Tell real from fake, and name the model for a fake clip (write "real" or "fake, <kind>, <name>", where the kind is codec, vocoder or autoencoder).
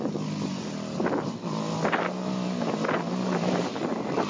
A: real